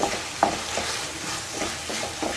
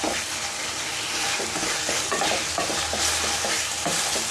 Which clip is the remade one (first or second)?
second